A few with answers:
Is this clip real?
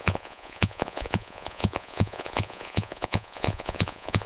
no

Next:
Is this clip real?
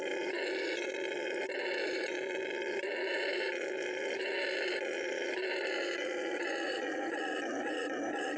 yes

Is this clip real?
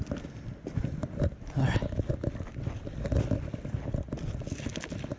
yes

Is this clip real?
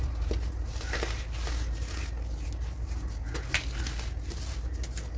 yes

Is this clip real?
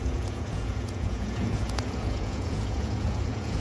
no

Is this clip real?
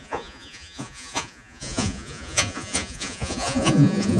no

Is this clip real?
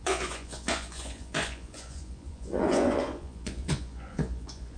no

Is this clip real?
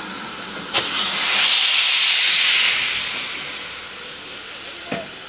yes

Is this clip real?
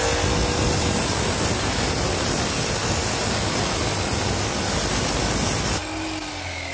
yes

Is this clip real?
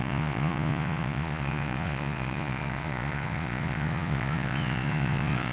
no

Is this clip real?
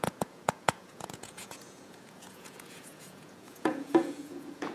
no